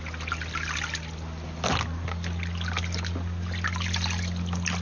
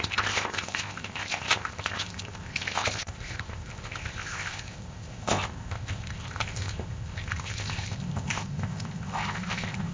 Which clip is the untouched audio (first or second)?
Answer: first